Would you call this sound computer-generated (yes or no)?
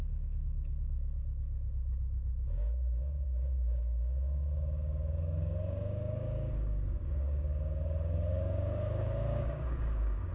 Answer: yes